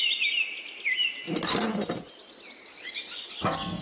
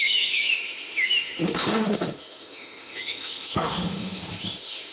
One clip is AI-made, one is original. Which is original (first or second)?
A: first